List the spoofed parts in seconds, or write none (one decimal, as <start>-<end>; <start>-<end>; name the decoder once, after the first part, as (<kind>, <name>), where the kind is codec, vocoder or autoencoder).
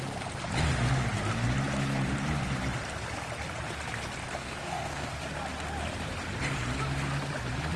4.4-5.2 (codec, SNAC)